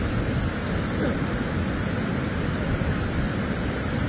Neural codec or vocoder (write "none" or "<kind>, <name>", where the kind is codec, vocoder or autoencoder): none